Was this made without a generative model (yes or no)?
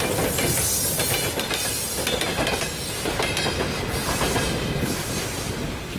yes